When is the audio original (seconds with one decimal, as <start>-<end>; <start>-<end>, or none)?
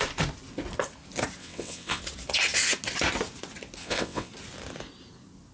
0.0-1.4; 2.0-3.8; 4.3-5.5